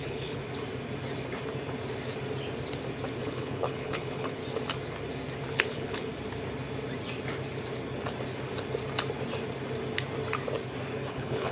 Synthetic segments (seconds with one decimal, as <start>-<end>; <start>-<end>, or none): 0.0-0.4; 3.2-4.4; 5.5-6.1; 11.1-11.5